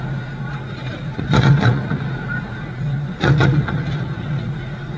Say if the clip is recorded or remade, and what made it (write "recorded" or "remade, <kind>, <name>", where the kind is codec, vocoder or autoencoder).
remade, vocoder, Vocos